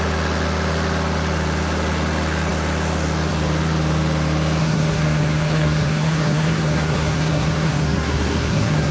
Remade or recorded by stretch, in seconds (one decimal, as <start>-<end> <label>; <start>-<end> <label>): 0.0-4.6 recorded; 4.6-8.9 remade